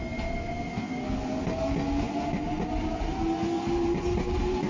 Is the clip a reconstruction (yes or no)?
no